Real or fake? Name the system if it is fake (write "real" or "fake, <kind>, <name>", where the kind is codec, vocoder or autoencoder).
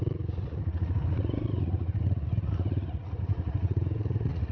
fake, vocoder, Vocos